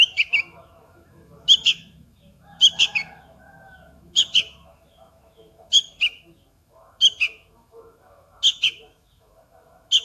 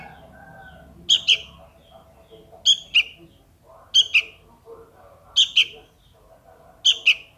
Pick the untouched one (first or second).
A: second